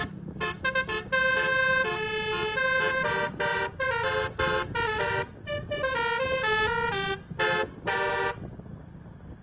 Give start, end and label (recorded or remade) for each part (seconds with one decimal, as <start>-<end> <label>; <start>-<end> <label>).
0.0-9.4 recorded